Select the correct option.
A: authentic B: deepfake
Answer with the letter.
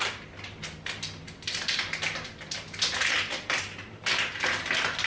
A